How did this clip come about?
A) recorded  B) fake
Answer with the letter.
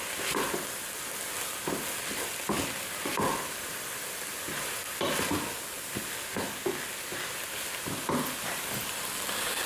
A